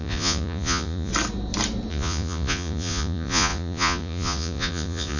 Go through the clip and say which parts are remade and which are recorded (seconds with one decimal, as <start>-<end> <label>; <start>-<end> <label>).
0.0-1.1 remade; 1.1-1.9 recorded; 1.9-5.2 remade